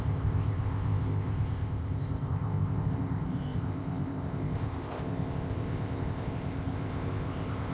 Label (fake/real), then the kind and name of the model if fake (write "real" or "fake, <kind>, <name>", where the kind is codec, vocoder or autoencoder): fake, codec, ZipCodec